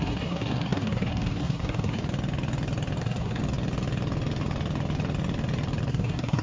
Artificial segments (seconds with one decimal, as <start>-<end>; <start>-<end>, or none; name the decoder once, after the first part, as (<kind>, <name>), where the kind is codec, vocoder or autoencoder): 0.0-2.0 (codec, SNAC); 3.0-3.4; 5.9-6.4